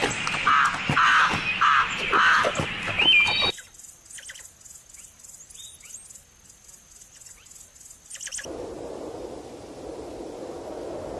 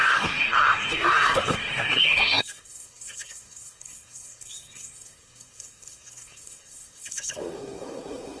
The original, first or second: first